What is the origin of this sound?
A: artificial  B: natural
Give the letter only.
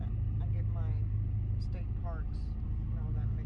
B